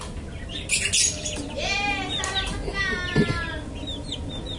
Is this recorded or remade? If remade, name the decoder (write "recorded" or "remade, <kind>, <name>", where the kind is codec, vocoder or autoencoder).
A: recorded